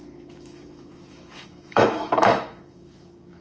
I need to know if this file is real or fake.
fake